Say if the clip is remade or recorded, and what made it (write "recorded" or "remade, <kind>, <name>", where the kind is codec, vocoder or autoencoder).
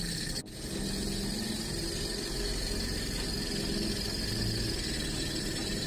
recorded